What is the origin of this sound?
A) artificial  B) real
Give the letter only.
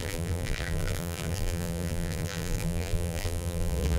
A